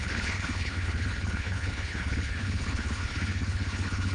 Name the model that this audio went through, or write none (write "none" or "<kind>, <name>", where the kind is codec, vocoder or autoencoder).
codec, HILCodec